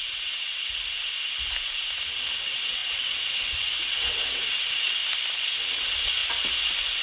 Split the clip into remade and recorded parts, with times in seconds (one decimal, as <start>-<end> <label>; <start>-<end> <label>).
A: 0.0-0.5 remade; 0.5-2.3 recorded; 2.3-5.0 remade; 5.0-5.8 recorded; 5.8-6.2 remade; 6.2-7.0 recorded